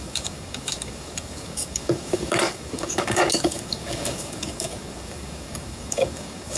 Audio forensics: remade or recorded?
remade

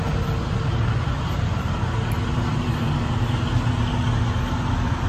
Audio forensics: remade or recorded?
recorded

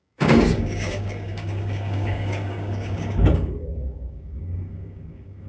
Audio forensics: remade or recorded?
remade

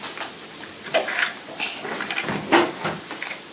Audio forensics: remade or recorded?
recorded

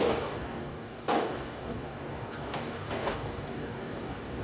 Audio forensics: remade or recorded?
remade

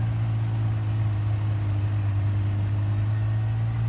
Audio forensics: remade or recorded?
recorded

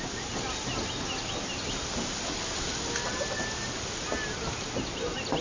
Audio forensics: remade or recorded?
recorded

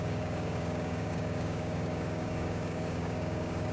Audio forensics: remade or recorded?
remade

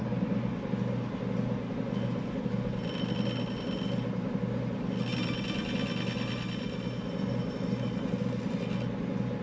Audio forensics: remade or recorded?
recorded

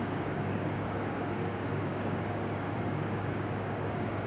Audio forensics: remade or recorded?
remade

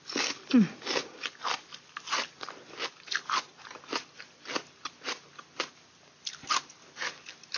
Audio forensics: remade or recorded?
recorded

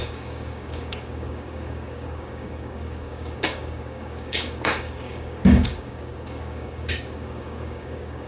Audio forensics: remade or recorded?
remade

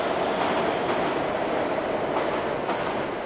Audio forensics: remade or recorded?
recorded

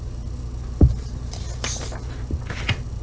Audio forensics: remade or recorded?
recorded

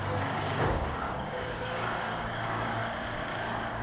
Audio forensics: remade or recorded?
remade